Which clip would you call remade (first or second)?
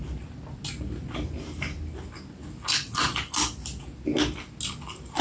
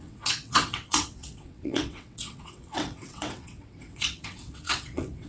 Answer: second